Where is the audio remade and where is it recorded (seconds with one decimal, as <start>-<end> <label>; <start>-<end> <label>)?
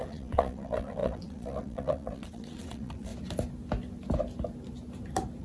0.0-3.1 remade; 3.1-5.4 recorded